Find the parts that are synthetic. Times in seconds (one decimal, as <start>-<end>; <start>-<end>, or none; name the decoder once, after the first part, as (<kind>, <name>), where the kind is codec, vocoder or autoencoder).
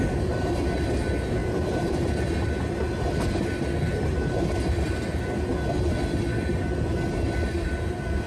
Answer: 1.4-2.5 (vocoder, BigVGAN v2)